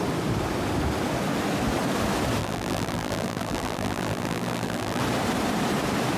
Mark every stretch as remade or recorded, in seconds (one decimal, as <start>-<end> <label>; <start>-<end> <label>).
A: 0.0-2.4 recorded; 2.4-5.0 remade; 5.0-6.2 recorded